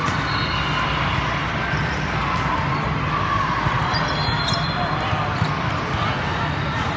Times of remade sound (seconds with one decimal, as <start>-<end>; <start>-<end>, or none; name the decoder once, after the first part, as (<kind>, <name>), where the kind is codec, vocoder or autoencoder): none